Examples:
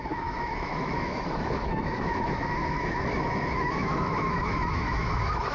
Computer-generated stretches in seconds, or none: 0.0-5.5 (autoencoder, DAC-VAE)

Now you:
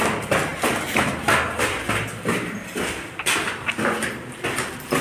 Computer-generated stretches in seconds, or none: none

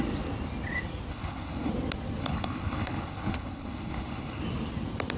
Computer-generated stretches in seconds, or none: 1.1-1.7 (codec, HILCodec); 2.2-4.4